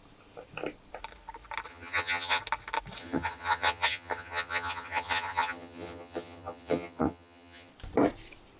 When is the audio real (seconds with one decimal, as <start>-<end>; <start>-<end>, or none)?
0.0-1.7; 2.4-3.0; 7.7-8.6